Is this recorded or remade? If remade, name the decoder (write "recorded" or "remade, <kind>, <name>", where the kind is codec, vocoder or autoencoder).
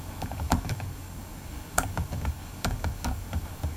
remade, codec, DAC